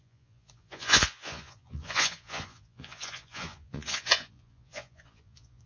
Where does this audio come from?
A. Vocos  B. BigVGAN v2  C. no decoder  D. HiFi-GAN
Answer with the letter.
A